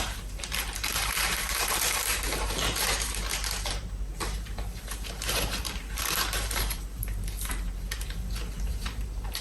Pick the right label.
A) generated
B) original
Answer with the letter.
A